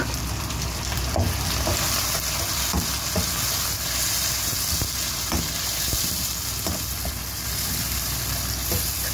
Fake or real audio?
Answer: fake